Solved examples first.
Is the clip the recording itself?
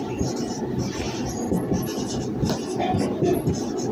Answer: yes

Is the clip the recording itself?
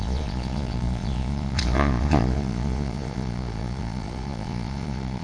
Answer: no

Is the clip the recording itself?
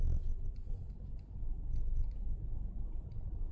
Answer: yes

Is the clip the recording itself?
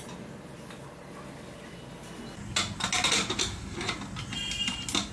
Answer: yes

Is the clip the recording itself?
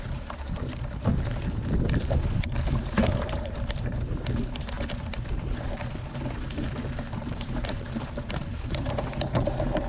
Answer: no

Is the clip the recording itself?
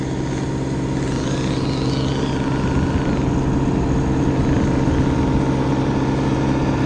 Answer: yes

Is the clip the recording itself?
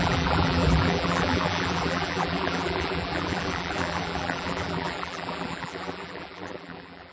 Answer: no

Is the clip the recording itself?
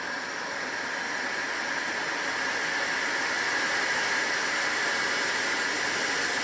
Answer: yes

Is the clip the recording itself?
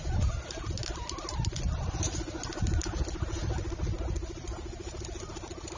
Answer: yes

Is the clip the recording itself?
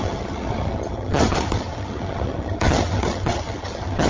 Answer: no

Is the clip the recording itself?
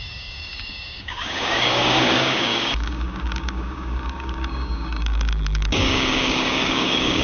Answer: no